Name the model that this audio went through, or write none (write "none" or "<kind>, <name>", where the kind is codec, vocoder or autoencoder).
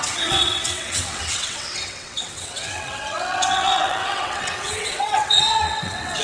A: vocoder, WaveNeXt